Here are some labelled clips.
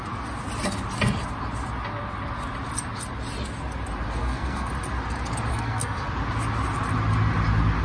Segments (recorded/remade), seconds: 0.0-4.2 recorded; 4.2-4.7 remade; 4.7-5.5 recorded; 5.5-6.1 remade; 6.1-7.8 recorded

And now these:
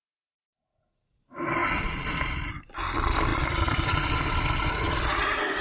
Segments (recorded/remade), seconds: 0.0-5.6 recorded

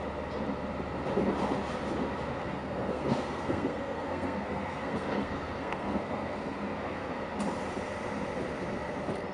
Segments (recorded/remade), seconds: 0.0-2.4 recorded; 2.4-7.2 remade; 7.2-9.3 recorded

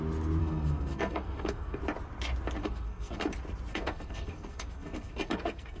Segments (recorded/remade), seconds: 0.0-0.4 recorded; 0.4-1.8 remade; 1.8-2.6 recorded; 2.6-3.3 remade; 3.3-3.7 recorded; 3.7-5.8 remade

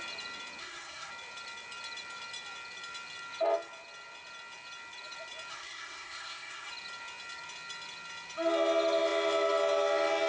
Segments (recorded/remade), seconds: 0.0-0.6 recorded; 0.6-1.1 remade; 1.1-5.5 recorded; 5.5-6.7 remade; 6.7-10.3 recorded